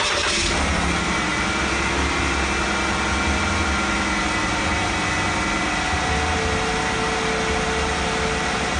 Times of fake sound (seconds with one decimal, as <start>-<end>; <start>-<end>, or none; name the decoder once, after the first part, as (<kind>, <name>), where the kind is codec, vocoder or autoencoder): none